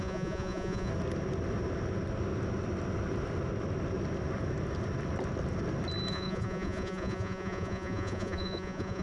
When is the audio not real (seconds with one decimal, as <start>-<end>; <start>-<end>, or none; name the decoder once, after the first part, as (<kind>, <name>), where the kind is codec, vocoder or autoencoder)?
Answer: 0.0-0.9 (vocoder, Vocos); 6.1-9.0